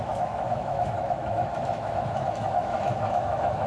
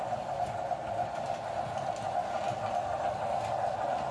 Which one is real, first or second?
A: second